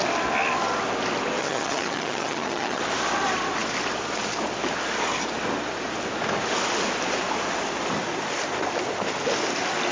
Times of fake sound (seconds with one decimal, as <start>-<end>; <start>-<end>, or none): 1.4-2.8